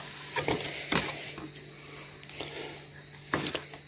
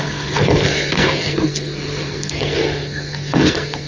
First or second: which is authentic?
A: first